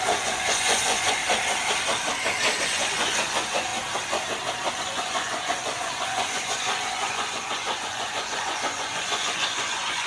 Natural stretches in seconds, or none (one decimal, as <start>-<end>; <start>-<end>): 1.2-2.6; 3.7-4.7